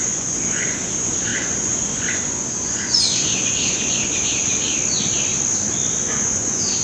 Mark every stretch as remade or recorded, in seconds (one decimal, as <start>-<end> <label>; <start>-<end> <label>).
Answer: 0.0-4.7 remade; 4.7-6.0 recorded; 6.0-6.8 remade